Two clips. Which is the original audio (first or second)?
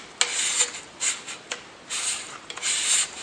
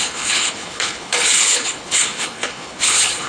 first